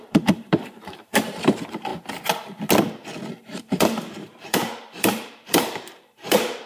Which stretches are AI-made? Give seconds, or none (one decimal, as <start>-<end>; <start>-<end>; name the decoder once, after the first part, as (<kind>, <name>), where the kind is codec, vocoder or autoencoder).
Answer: 0.0-1.9 (vocoder, BigVGAN v2); 3.3-6.7